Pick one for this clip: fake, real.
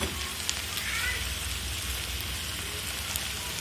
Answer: real